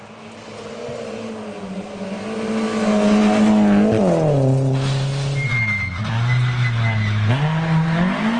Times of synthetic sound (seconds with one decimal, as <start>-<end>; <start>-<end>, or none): none